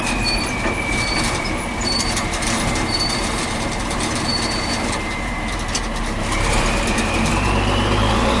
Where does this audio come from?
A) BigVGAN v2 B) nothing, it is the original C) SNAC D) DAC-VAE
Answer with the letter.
A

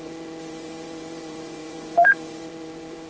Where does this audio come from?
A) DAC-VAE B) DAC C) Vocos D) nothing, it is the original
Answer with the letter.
C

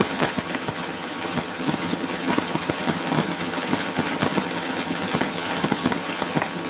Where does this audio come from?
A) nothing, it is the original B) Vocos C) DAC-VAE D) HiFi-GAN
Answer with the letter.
D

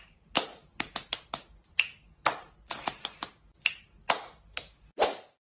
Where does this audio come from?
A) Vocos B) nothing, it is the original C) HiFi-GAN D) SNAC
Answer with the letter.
B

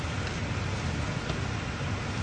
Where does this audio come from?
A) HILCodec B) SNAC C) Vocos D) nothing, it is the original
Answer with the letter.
D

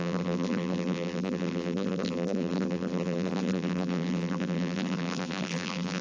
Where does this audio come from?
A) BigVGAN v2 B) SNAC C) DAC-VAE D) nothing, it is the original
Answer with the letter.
A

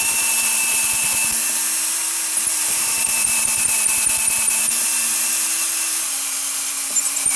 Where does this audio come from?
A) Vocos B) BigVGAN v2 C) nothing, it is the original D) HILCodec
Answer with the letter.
B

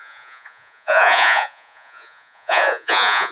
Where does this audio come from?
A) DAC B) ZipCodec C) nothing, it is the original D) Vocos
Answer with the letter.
D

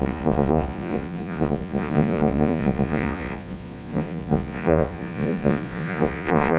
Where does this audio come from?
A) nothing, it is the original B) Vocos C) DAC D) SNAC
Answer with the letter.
B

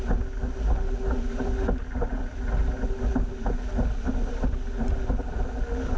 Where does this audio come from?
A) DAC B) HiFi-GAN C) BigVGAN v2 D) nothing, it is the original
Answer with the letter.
D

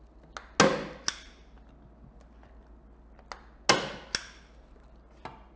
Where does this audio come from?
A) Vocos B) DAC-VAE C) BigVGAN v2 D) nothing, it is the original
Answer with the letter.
D